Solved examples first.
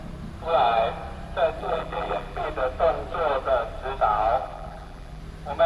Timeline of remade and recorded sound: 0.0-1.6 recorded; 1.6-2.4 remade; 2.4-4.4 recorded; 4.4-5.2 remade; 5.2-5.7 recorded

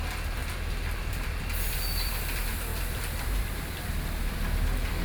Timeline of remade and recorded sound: 0.0-0.4 recorded; 0.4-2.2 remade; 2.2-2.7 recorded; 2.7-5.0 remade

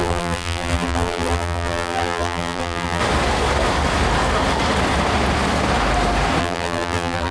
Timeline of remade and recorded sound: 0.0-3.0 remade; 3.0-6.4 recorded; 6.4-7.3 remade

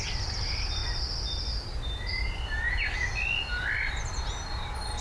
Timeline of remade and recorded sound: 0.0-0.8 remade; 0.8-2.7 recorded; 2.7-3.8 remade; 3.8-5.0 recorded

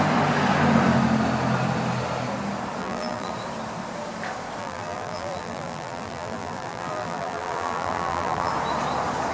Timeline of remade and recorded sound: 0.0-2.8 recorded; 2.8-3.3 remade; 3.3-4.6 recorded; 4.6-8.5 remade; 8.5-9.3 recorded

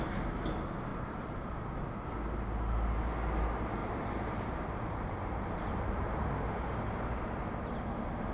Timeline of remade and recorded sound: 0.0-0.9 recorded; 0.9-1.6 remade; 1.6-3.8 recorded; 3.8-7.3 remade; 7.3-8.3 recorded

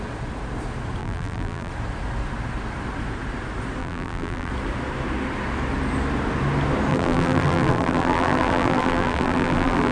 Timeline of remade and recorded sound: 0.0-1.0 recorded; 1.0-1.7 remade; 1.7-3.8 recorded; 3.8-4.5 remade; 4.5-6.9 recorded; 6.9-9.9 remade